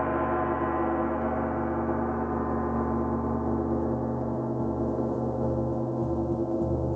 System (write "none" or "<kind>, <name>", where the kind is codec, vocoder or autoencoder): none